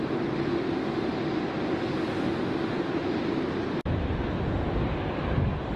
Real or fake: real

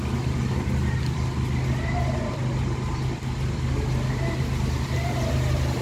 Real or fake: real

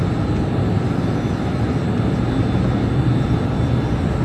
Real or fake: real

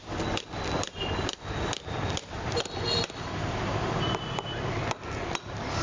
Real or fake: real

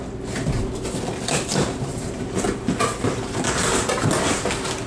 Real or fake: real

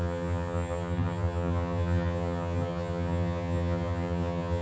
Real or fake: fake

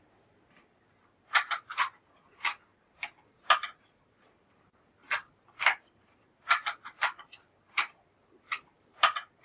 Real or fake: fake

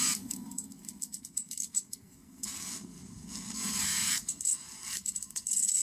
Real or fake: fake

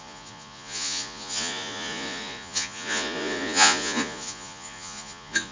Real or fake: fake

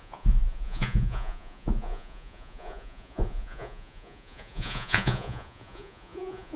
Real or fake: fake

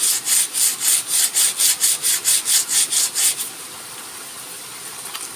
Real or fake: real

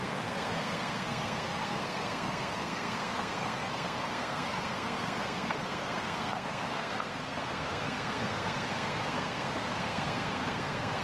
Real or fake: fake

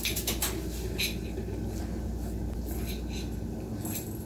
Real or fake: real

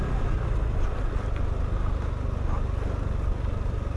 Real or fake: real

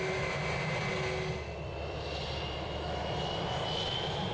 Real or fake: real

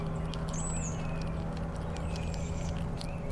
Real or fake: real